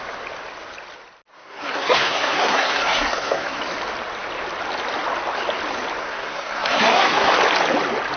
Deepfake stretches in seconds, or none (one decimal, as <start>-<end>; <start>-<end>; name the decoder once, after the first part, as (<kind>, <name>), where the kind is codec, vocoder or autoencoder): 1.3-3.6 (codec, SNAC); 6.0-7.3